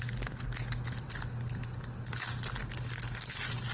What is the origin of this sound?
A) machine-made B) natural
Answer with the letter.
B